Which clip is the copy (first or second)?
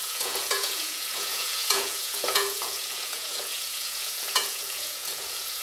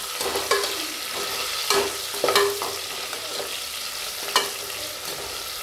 first